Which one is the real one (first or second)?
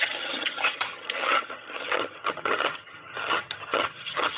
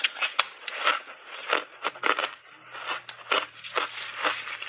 second